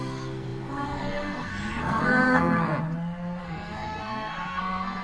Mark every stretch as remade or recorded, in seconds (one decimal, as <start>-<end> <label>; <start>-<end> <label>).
0.0-2.7 remade; 2.7-3.4 recorded; 3.4-5.0 remade